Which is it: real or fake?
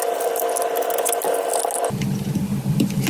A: real